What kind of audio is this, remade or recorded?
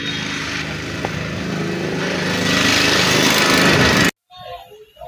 recorded